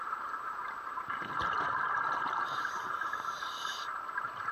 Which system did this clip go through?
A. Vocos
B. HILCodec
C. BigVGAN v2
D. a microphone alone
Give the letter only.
C